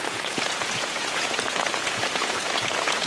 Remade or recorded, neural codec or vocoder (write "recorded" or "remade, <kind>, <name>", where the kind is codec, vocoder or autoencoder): remade, vocoder, Vocos